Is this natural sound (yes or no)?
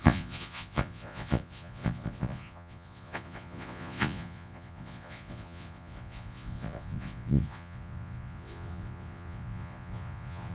no